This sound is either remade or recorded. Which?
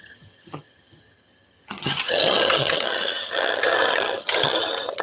remade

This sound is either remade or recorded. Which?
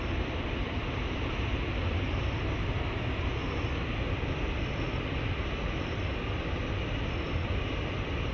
recorded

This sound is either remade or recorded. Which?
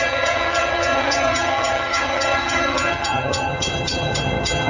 remade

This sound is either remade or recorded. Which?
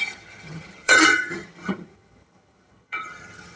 remade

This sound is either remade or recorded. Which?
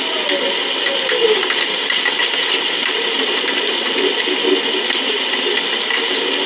recorded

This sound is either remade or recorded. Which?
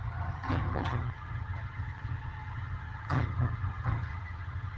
remade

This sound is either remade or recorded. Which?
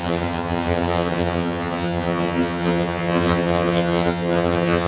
remade